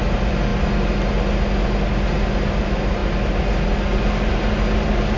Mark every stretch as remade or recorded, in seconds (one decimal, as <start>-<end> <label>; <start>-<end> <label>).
0.0-5.2 recorded